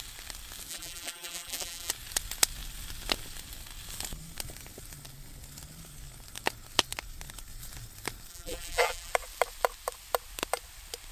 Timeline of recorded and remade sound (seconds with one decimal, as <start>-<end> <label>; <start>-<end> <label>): 0.0-0.7 recorded; 0.7-1.9 remade; 1.9-8.3 recorded; 8.3-9.1 remade; 9.1-11.1 recorded